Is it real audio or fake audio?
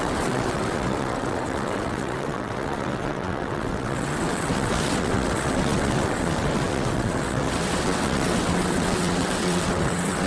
fake